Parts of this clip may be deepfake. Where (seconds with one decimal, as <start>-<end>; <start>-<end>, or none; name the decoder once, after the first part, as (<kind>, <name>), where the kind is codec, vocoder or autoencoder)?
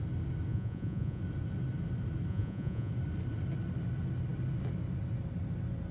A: 0.5-1.2 (vocoder, Vocos); 2.3-2.9